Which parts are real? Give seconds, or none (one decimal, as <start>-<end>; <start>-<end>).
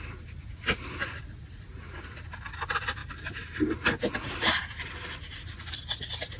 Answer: 0.0-6.4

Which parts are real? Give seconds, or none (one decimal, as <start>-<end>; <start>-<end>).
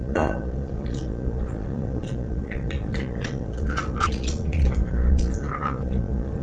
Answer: none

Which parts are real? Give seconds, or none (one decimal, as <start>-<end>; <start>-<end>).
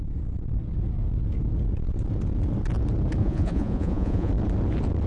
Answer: 0.0-3.2; 4.3-5.1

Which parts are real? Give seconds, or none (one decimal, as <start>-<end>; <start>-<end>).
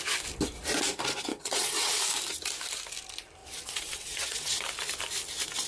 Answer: 0.0-1.3; 2.0-3.4; 4.6-5.7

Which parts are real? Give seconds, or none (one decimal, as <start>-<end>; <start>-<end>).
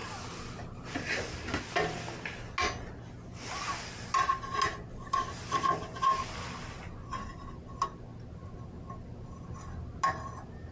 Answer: 0.0-10.7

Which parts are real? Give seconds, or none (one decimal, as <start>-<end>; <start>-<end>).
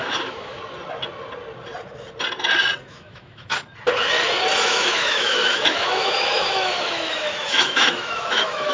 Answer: 0.6-2.9; 3.5-4.6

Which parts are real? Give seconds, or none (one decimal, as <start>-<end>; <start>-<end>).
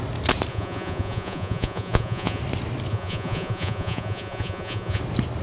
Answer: 0.0-0.5; 2.4-2.9; 5.0-5.4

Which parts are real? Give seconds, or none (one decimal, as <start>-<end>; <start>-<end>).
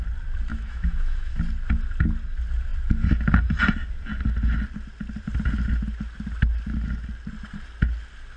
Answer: 0.0-0.5; 1.4-8.4